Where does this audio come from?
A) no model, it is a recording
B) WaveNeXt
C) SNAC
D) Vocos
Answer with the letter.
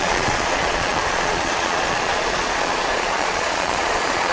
D